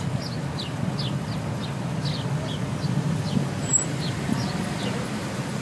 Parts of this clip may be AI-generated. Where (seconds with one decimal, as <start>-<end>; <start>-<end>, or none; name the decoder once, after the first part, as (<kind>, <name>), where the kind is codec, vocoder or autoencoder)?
none